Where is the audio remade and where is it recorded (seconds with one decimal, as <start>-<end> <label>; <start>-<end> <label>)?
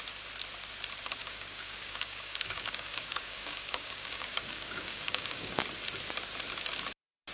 0.0-1.2 recorded; 1.2-5.6 remade; 5.6-7.3 recorded